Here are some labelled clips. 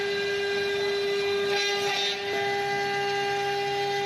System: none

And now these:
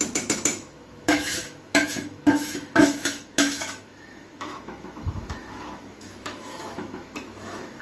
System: autoencoder, DAC-VAE